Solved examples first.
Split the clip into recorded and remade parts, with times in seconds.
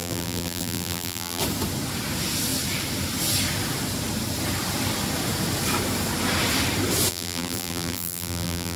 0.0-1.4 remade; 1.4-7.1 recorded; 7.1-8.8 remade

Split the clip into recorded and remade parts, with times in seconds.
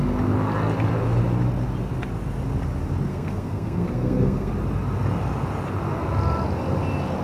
0.0-3.1 recorded; 3.1-4.5 remade; 4.5-7.2 recorded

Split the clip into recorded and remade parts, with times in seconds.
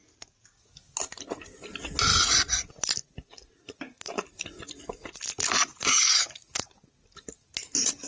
0.0-2.1 recorded; 2.1-2.7 remade; 2.7-5.7 recorded; 5.7-6.7 remade; 6.7-8.1 recorded